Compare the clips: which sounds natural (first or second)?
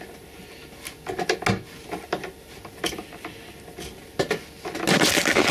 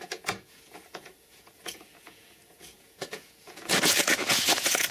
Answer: first